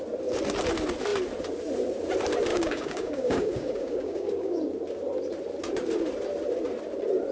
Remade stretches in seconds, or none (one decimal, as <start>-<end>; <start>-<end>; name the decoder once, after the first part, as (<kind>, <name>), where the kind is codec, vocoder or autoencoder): 2.5-4.6 (codec, DAC)